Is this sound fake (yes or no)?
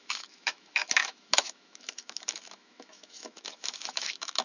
yes